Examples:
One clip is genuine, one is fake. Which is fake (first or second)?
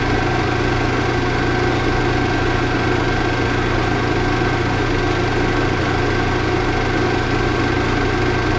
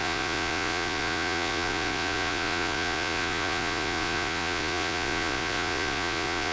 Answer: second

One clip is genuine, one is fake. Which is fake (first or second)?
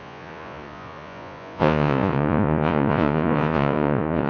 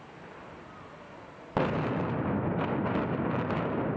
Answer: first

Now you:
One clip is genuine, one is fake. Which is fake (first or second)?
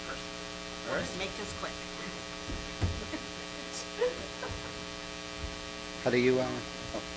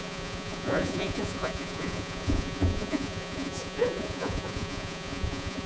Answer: second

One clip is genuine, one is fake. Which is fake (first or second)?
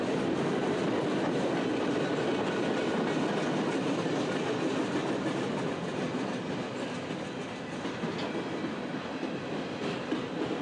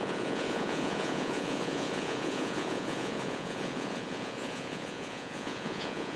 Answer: second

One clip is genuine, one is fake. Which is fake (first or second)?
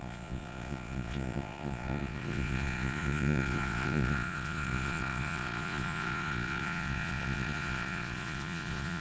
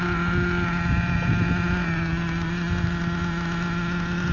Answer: first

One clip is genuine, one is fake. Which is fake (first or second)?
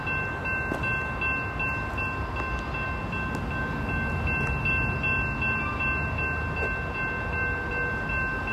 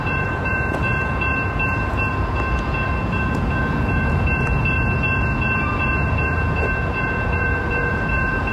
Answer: second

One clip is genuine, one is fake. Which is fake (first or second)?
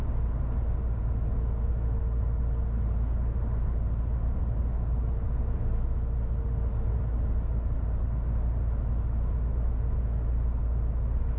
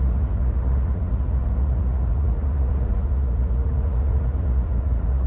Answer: second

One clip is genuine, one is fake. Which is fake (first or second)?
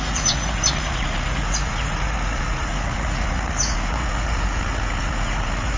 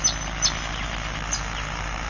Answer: first